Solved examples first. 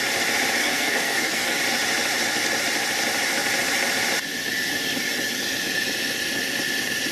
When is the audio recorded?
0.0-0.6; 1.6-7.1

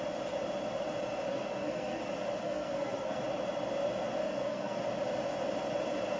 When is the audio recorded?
0.0-1.3; 2.0-2.4; 3.2-4.2; 4.8-6.2

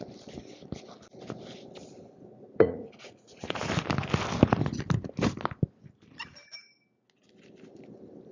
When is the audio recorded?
0.0-2.4; 3.6-8.3

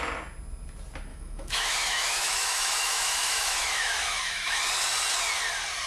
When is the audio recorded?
0.0-1.1; 4.6-5.9

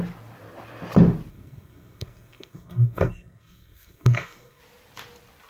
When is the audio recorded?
0.0-1.3; 4.6-5.5

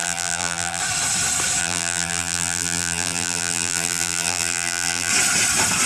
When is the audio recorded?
0.8-1.6; 5.1-5.9

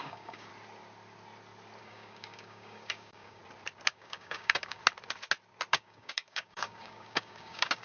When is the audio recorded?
0.5-1.8; 3.4-3.9; 4.8-5.7